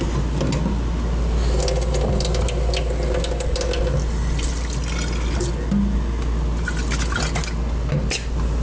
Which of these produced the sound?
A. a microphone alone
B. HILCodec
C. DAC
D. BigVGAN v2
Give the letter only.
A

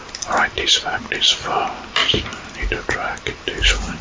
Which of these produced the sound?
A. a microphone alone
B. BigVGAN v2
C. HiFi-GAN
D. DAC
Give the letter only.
A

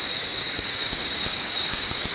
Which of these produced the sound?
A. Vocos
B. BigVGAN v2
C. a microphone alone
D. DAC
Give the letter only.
D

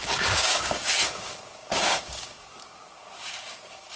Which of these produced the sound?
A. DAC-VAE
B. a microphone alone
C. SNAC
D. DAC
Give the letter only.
D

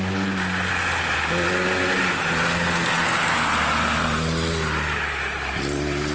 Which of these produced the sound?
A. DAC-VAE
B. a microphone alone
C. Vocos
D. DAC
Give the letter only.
B